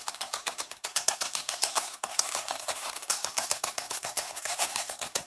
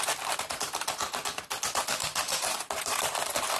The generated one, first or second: first